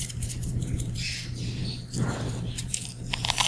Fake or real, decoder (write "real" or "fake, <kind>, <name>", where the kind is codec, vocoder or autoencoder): fake, vocoder, BigVGAN v2